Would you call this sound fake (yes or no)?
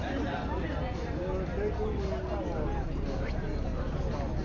no